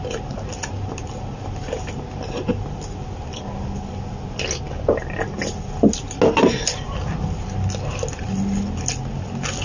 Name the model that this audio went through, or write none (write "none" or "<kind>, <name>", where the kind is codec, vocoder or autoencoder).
none